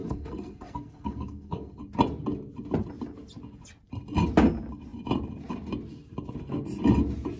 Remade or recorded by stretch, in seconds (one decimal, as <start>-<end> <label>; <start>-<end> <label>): 0.0-1.8 remade; 1.8-7.4 recorded